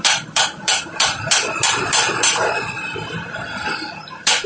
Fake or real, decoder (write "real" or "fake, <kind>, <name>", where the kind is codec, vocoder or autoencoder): fake, vocoder, BigVGAN v2